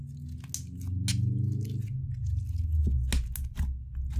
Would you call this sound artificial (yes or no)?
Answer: no